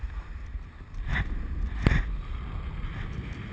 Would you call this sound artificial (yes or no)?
no